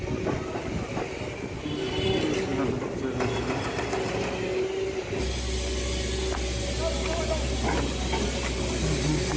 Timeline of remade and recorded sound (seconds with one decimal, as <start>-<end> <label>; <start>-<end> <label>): 0.0-9.4 recorded